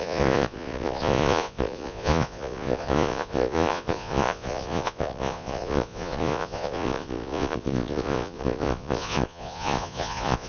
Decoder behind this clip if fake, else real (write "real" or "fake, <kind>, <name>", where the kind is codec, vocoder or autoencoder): fake, vocoder, Vocos